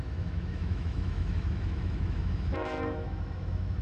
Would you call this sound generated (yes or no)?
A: yes